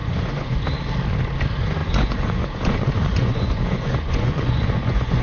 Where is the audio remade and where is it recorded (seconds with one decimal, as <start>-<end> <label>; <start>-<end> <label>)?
0.0-0.6 remade; 0.6-1.8 recorded; 1.8-5.2 remade